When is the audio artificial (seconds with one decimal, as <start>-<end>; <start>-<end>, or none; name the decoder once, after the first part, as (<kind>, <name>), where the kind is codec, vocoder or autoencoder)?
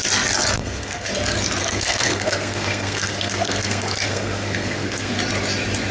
0.6-1.1 (codec, SNAC); 1.6-5.1